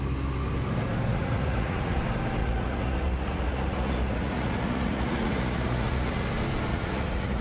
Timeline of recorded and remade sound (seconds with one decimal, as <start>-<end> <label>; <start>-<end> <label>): 0.0-1.1 recorded; 1.1-2.0 remade; 2.0-2.4 recorded; 2.4-6.3 remade; 6.3-6.7 recorded; 6.7-7.4 remade